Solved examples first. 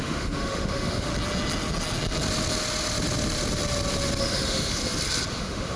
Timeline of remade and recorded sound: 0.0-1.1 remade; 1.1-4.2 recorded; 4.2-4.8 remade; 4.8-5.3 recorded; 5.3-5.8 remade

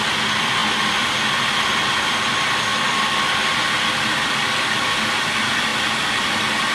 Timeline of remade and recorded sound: 0.0-6.7 recorded

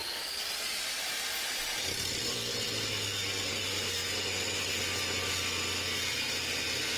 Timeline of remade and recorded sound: 0.0-7.0 recorded